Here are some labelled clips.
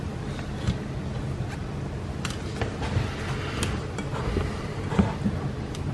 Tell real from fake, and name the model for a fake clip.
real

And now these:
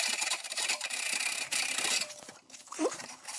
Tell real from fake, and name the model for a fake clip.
fake, vocoder, BigVGAN v2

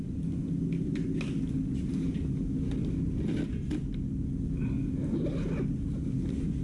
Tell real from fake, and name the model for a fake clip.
real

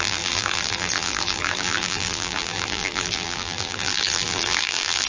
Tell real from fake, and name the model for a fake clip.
fake, vocoder, BigVGAN v2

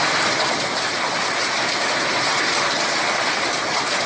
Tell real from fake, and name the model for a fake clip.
real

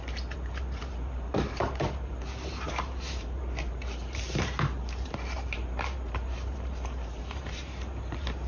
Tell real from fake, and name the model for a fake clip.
fake, vocoder, BigVGAN v2